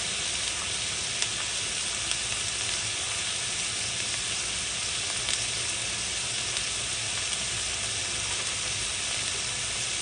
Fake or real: real